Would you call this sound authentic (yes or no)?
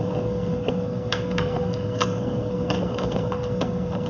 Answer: no